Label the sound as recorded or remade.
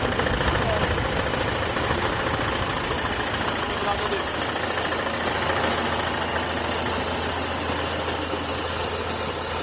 recorded